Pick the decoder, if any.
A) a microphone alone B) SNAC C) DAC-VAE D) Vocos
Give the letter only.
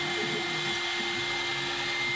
A